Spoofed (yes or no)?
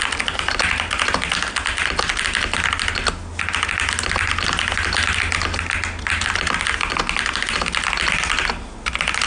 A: no